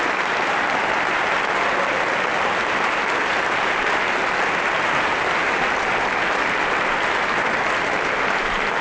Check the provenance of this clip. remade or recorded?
recorded